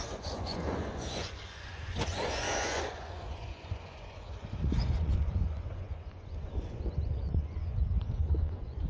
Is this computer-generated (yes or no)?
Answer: yes